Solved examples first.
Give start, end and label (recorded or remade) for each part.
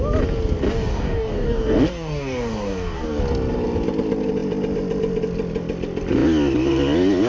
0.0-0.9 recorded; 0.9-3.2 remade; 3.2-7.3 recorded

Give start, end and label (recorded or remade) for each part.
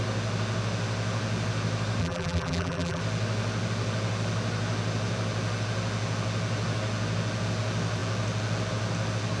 0.0-2.0 recorded; 2.0-3.0 remade; 3.0-9.4 recorded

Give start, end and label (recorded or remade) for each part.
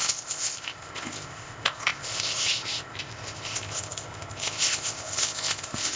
0.0-6.0 remade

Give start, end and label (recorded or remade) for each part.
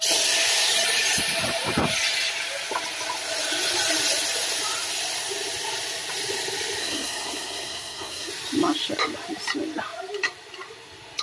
0.0-6.8 recorded; 6.8-8.3 remade; 8.3-11.2 recorded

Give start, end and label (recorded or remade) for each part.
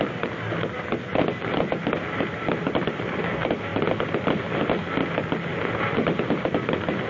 0.0-7.1 recorded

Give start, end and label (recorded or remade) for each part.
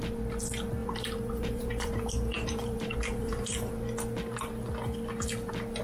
0.0-0.8 recorded; 0.8-3.7 remade; 3.7-5.8 recorded